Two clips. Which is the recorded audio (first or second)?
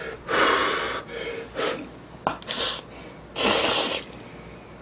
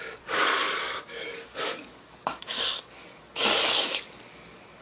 first